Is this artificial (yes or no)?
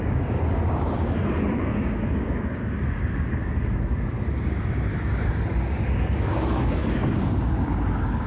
yes